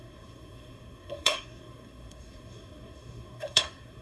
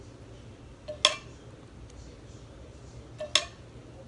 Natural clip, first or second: second